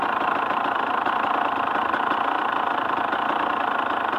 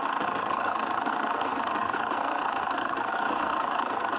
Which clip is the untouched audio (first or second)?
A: first